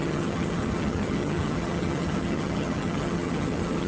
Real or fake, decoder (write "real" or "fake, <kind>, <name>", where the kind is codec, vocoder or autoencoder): fake, vocoder, HiFi-GAN